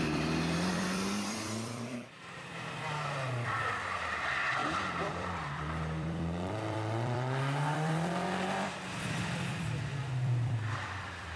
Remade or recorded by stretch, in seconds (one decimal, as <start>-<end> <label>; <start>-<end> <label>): 0.0-11.4 remade